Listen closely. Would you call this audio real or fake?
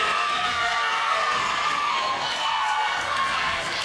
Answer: fake